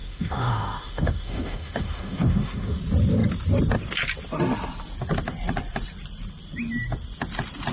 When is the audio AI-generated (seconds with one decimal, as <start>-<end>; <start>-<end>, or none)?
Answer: 0.0-2.8